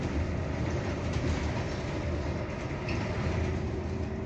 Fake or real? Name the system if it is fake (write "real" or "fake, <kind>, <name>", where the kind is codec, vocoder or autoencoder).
real